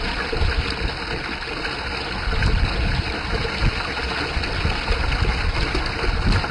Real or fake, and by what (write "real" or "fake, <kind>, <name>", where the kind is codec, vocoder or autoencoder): real